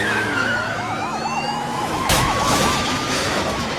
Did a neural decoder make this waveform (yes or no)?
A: yes